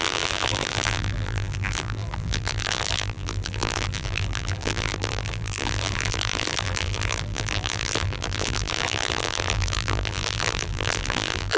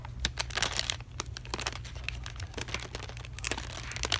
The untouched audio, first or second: second